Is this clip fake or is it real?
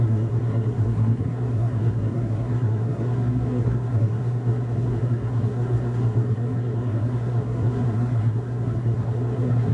fake